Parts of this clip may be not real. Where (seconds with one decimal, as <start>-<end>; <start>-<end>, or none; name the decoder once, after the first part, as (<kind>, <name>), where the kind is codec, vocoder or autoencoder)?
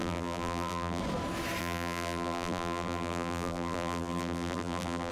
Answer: 0.0-1.0 (vocoder, BigVGAN v2); 1.6-5.1